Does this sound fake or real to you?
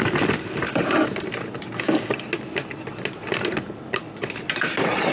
real